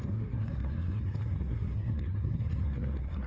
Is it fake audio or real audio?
fake